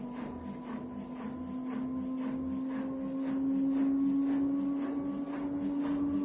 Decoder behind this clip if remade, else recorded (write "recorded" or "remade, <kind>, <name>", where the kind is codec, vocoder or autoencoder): recorded